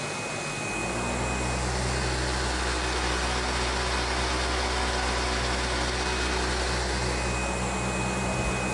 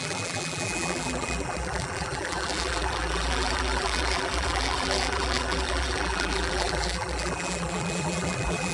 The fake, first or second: second